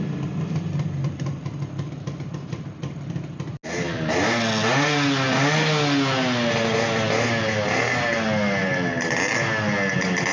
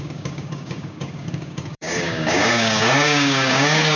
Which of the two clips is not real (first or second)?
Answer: second